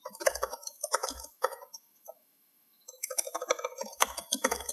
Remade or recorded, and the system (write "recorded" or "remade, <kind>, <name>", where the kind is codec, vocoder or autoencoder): remade, autoencoder, DAC-VAE